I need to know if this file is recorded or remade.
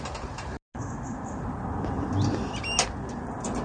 recorded